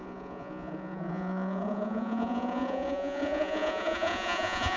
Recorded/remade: remade